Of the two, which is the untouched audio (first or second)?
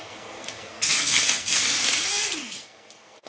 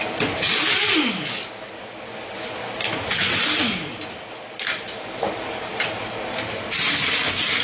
second